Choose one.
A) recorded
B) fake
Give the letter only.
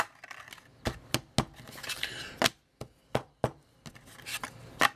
A